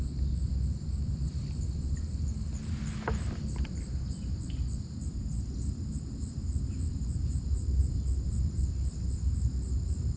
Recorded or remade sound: recorded